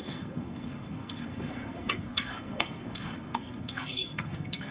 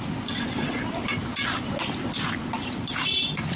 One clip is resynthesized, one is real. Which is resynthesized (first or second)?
first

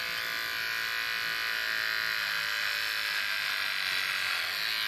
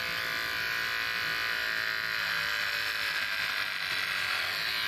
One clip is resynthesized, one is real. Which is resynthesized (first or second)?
second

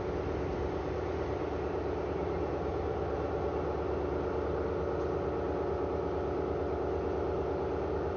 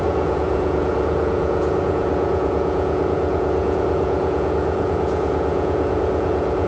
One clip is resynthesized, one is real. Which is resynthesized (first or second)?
second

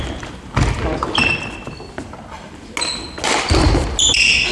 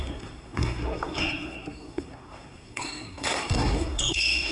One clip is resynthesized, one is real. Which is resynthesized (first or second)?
second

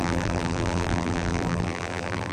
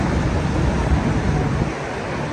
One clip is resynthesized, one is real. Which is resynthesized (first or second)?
first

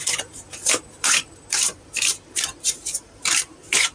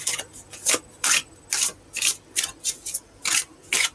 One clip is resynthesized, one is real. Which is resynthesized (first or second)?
first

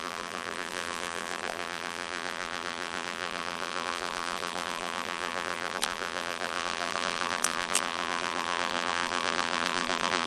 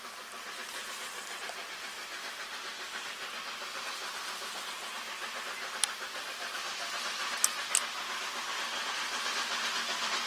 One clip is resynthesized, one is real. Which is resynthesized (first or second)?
first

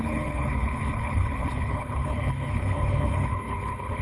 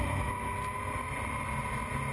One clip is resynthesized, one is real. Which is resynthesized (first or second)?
first